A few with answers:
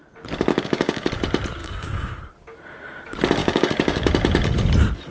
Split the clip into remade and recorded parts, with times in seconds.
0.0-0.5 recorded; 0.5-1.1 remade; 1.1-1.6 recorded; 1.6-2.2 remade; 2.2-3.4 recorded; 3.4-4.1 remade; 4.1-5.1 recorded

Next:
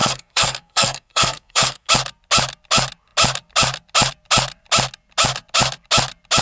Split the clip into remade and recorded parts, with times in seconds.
0.0-1.9 remade; 1.9-6.4 recorded

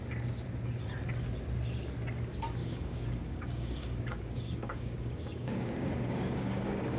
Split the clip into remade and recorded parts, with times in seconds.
0.0-2.6 recorded; 2.6-7.0 remade

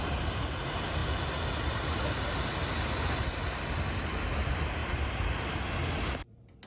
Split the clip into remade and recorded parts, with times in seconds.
0.0-6.7 recorded

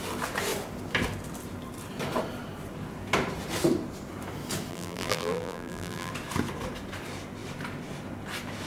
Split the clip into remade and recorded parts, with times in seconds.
0.0-4.7 recorded; 4.7-6.1 remade; 6.1-8.7 recorded

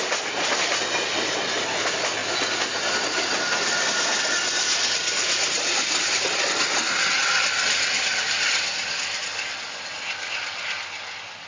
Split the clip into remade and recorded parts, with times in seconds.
0.0-11.5 recorded